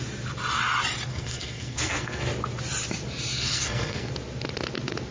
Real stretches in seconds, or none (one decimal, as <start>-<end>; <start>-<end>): 0.0-1.1; 2.2-3.3; 4.1-5.1